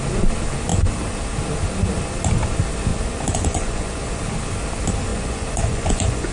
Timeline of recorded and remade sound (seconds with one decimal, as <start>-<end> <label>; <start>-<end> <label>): 0.0-2.9 recorded; 2.9-4.2 remade; 4.2-5.1 recorded; 5.1-6.3 remade